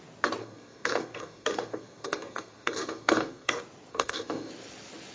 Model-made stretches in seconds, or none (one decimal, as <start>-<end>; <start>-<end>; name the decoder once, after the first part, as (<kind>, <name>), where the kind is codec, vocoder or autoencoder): 0.4-3.5 (codec, SNAC); 3.9-4.5